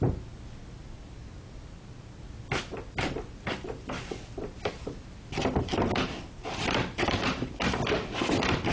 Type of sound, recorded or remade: recorded